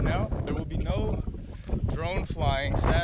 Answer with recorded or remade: recorded